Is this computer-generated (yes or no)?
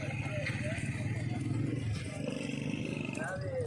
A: no